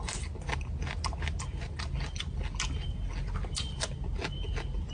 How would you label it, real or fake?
real